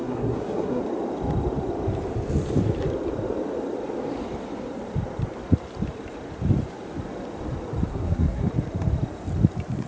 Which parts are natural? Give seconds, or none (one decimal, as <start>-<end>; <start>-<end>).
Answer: 0.8-7.9; 8.5-9.9